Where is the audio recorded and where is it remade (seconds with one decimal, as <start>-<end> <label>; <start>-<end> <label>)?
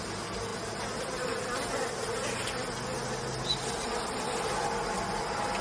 0.0-5.6 recorded